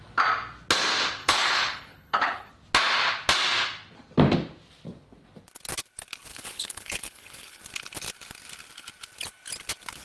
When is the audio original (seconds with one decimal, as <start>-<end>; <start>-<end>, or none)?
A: 0.0-1.2; 2.5-6.3; 7.6-10.0